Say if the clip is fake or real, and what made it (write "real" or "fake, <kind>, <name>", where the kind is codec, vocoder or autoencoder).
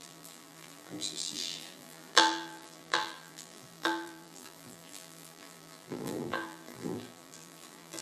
fake, vocoder, BigVGAN v2